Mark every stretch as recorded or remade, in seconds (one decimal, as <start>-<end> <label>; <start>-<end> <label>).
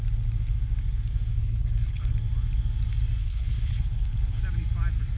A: 0.0-1.4 recorded; 1.4-2.1 remade; 2.1-3.2 recorded; 3.2-4.4 remade; 4.4-5.2 recorded